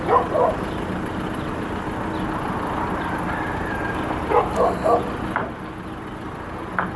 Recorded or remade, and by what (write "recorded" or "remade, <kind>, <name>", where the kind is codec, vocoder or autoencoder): recorded